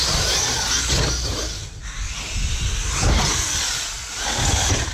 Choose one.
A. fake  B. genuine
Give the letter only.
B